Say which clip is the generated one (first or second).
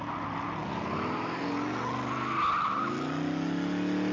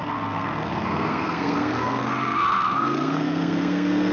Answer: second